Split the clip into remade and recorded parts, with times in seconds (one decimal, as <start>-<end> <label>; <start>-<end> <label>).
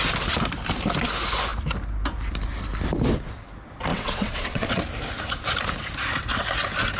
0.0-3.9 recorded; 3.9-4.8 remade; 4.8-7.0 recorded